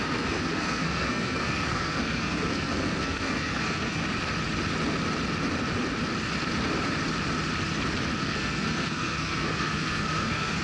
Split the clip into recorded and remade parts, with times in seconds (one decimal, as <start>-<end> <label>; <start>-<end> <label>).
0.0-4.0 remade; 4.0-8.2 recorded; 8.2-10.6 remade